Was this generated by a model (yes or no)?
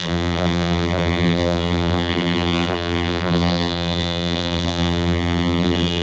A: yes